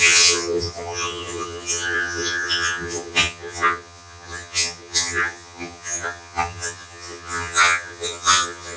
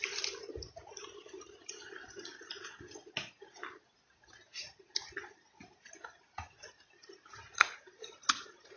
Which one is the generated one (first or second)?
first